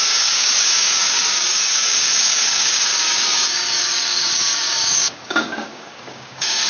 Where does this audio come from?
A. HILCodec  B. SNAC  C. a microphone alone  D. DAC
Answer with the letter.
D